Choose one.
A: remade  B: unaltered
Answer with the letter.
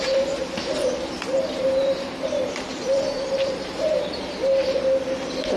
A